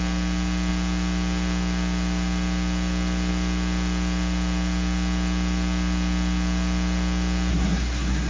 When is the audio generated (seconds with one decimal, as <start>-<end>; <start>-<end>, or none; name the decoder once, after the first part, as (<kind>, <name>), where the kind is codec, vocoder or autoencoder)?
7.5-8.3 (codec, SNAC)